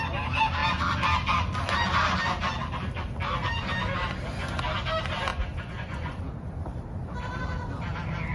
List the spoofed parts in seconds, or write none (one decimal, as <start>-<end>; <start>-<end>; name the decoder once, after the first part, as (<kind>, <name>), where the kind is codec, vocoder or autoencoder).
5.3-6.2 (vocoder, Vocos)